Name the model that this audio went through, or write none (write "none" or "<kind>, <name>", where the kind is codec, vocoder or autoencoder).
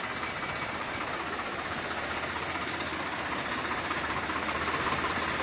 vocoder, BigVGAN v2